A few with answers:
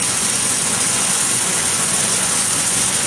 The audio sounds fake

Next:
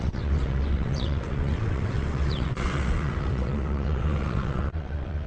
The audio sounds fake